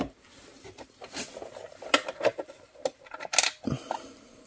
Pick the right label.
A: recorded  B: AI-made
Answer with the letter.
A